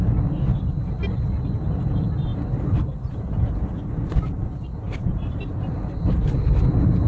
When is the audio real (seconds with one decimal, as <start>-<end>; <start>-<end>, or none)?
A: 0.0-2.3; 6.6-7.1